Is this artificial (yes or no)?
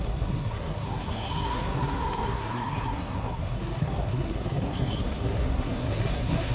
yes